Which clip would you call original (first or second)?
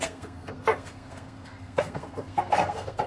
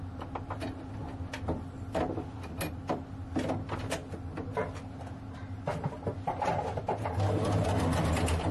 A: second